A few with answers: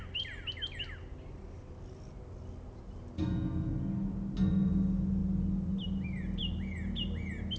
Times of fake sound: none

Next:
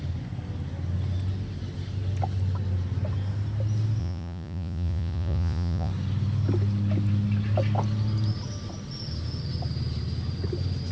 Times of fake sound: 4.0-5.9 (vocoder, Vocos)

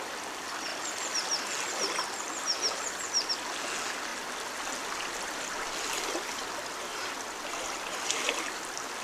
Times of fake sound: none

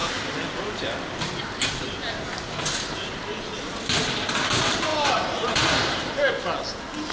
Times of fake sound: 0.0-4.3 (vocoder, BigVGAN v2); 4.9-6.1

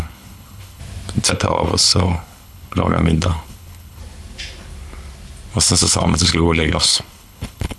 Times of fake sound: 0.0-0.8 (codec, HILCodec); 1.3-4.0; 5.8-7.8

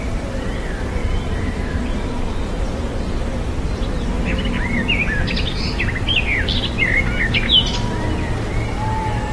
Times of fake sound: 1.0-3.3 (vocoder, BigVGAN v2)